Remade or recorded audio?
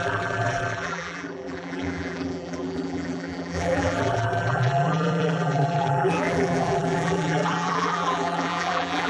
remade